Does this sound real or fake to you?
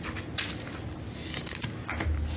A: real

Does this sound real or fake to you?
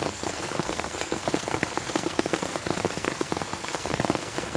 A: fake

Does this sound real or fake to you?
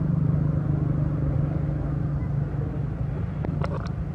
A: real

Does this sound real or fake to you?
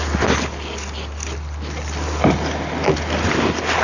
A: real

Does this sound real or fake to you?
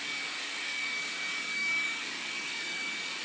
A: fake